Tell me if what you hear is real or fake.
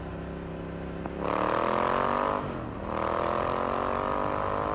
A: real